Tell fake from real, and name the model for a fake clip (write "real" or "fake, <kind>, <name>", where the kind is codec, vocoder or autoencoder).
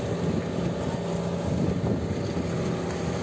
real